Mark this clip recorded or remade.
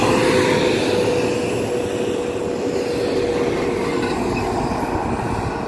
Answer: recorded